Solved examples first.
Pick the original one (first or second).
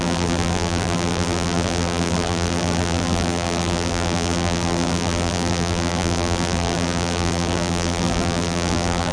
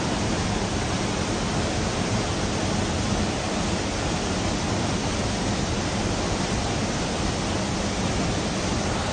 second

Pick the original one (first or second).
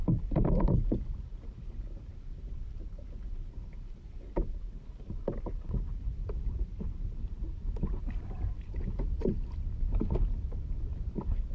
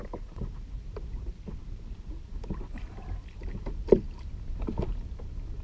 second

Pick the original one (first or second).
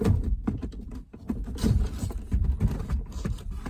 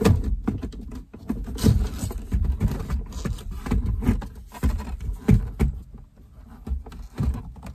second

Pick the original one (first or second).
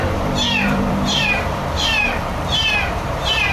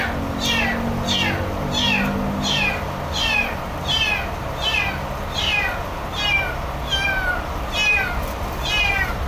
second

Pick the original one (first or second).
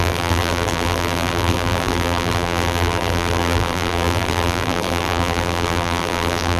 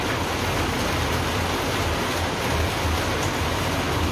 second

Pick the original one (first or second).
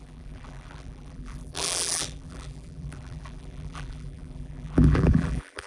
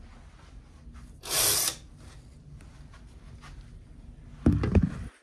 second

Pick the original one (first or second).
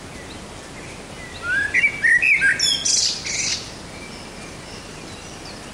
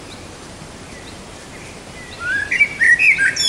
first